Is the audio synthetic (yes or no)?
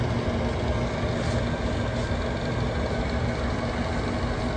no